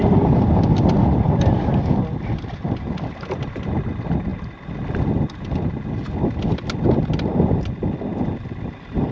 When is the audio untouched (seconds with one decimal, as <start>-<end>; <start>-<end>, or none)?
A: 0.0-9.1